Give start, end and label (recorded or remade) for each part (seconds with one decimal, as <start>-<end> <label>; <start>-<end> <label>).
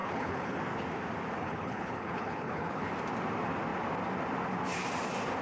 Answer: 0.0-0.6 remade; 0.6-1.4 recorded; 1.4-2.9 remade; 2.9-5.4 recorded